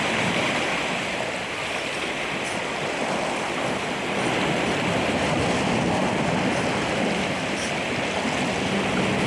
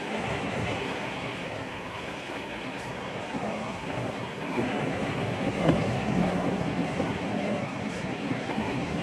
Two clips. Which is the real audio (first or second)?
first